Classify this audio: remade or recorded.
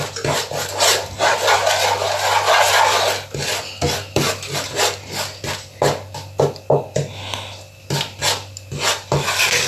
recorded